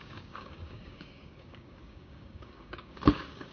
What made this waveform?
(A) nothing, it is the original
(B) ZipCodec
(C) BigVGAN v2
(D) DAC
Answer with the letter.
D